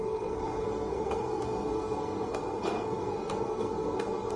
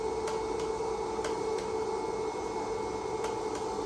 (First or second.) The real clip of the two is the second